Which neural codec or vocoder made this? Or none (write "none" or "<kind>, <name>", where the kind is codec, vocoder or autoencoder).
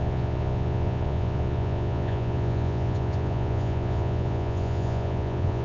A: vocoder, Vocos